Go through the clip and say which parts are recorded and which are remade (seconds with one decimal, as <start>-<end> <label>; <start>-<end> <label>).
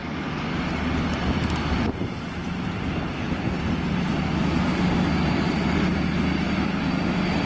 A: 0.0-7.5 recorded